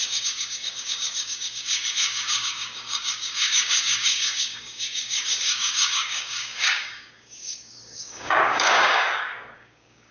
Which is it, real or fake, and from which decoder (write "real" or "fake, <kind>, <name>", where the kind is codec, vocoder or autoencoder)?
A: fake, codec, DAC